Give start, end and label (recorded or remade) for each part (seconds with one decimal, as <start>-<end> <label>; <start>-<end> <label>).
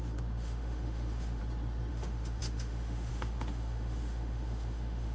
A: 0.0-1.4 remade; 1.4-1.9 recorded; 1.9-5.1 remade